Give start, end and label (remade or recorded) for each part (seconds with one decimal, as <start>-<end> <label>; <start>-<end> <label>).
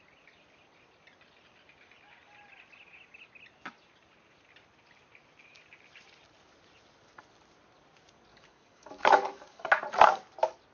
0.0-8.3 recorded; 8.3-9.7 remade; 9.7-10.7 recorded